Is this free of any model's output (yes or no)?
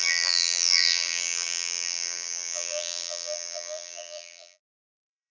no